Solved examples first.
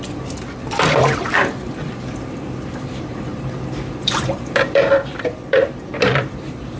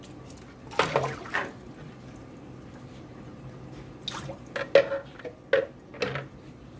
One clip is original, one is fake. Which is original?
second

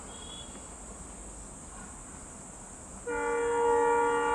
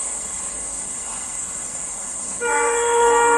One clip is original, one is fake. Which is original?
first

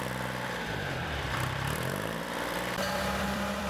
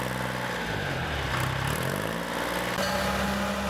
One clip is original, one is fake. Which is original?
second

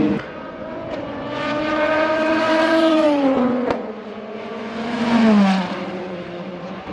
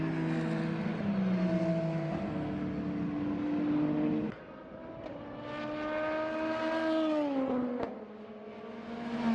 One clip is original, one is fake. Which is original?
second